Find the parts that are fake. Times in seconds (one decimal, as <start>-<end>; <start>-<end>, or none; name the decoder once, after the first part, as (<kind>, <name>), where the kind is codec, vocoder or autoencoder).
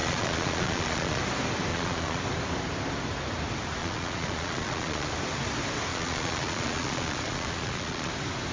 0.0-1.2 (vocoder, Vocos); 1.7-2.2; 3.8-5.1; 5.9-8.1